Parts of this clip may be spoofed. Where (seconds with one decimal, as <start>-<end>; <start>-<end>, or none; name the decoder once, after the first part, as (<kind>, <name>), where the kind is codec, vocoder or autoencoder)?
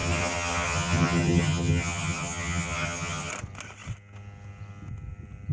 0.0-3.3 (vocoder, HiFi-GAN)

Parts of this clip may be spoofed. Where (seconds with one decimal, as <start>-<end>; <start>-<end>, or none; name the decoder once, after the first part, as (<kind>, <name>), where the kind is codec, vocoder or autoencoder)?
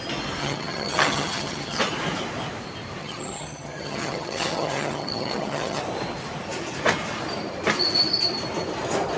0.4-1.8 (vocoder, HiFi-GAN); 3.0-5.8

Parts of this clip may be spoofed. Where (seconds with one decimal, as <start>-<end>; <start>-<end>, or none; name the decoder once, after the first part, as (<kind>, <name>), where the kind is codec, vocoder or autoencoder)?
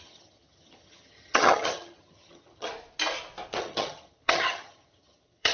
0.0-2.7 (vocoder, HiFi-GAN); 3.6-5.5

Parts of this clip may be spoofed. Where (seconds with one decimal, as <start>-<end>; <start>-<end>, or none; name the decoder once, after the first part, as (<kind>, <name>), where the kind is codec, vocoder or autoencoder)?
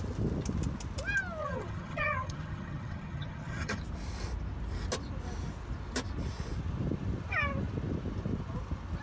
1.4-3.8 (vocoder, HiFi-GAN)